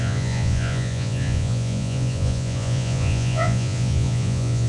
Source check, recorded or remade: remade